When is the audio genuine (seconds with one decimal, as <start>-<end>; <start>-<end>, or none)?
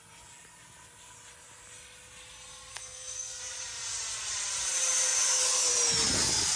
0.0-2.7; 3.4-6.6